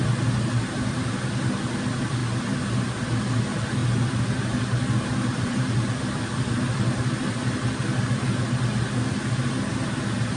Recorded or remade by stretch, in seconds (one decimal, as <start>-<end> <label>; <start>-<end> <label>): 0.0-10.4 recorded